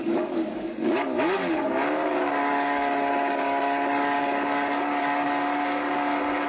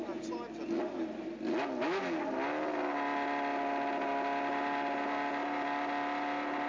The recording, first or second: second